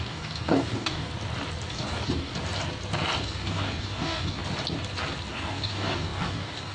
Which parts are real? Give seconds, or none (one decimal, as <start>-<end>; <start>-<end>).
1.1-1.7; 2.3-3.2; 4.4-5.3